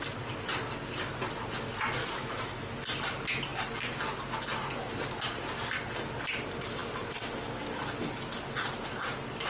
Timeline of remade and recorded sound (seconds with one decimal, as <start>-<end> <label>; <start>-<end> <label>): 0.0-2.0 recorded; 2.0-2.7 remade; 2.7-9.5 recorded